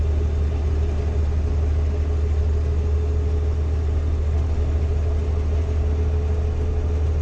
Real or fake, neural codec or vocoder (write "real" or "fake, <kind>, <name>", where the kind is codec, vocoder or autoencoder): real